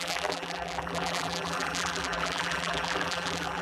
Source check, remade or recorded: remade